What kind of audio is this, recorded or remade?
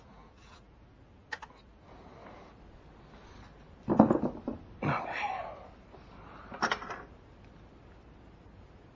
recorded